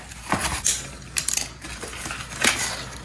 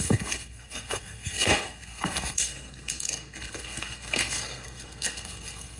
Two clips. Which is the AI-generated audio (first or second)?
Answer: second